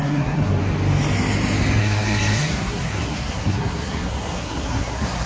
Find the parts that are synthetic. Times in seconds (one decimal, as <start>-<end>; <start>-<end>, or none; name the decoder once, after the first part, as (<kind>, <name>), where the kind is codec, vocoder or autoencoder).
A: 0.0-0.6 (codec, SNAC); 1.8-5.3